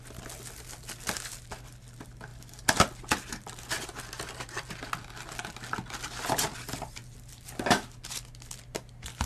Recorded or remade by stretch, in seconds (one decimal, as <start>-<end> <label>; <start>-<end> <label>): 0.0-9.3 recorded